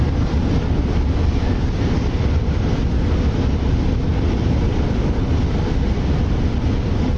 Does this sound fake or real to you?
real